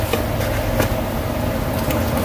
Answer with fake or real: real